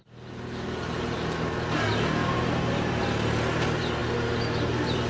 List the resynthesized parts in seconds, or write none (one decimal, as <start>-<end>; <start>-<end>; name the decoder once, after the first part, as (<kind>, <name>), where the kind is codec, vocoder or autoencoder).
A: 2.2-3.0 (vocoder, BigVGAN v2)